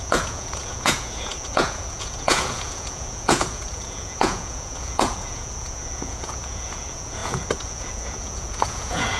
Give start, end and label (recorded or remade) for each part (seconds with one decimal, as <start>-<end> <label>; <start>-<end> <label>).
0.0-9.2 remade